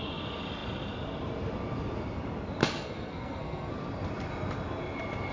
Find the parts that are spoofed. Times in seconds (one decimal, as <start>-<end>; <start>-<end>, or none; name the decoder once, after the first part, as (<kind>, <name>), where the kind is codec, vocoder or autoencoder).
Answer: 2.6-3.7 (codec, SNAC)

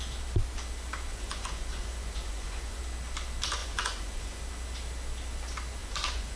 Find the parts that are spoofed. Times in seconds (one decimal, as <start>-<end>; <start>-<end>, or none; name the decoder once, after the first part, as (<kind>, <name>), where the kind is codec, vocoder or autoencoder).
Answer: 1.1-2.8 (vocoder, Vocos); 3.6-4.4; 5.8-6.4

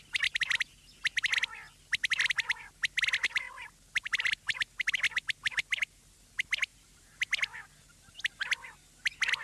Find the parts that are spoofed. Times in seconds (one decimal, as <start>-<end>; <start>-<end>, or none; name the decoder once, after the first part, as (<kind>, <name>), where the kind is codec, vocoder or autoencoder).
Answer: 6.7-7.3 (vocoder, BigVGAN v2)

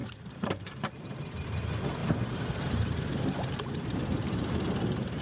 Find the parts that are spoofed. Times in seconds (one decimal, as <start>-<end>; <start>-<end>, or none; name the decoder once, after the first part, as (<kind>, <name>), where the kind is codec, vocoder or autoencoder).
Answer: 0.0-1.0 (vocoder, BigVGAN v2); 2.0-5.2